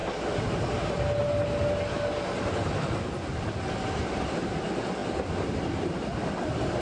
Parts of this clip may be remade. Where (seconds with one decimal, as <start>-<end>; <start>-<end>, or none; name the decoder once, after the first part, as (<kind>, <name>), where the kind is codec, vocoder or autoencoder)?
none